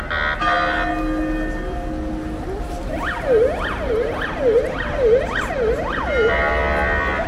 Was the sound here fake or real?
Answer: real